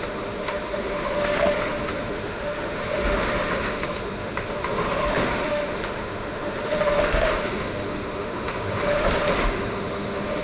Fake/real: fake